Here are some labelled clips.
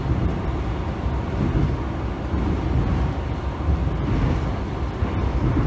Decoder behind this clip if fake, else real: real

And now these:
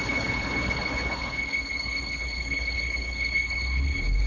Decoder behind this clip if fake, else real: fake, codec, HILCodec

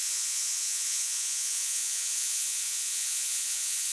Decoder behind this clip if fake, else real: fake, vocoder, Vocos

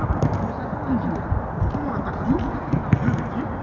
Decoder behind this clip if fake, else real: real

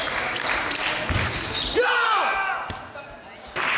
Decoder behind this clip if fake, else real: real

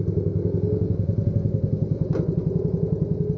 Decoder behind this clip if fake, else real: real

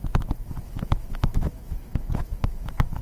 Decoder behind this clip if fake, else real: fake, autoencoder, DAC-VAE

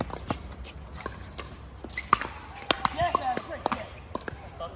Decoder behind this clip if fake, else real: real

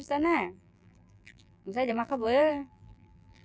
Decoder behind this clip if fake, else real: fake, vocoder, BigVGAN v2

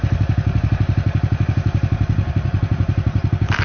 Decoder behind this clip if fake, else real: real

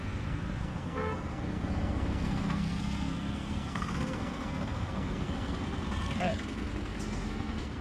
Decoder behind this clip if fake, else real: fake, codec, SNAC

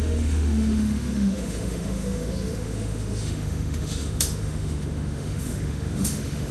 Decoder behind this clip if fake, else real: fake, autoencoder, DAC-VAE